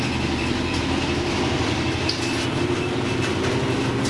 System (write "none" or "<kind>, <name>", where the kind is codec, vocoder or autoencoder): none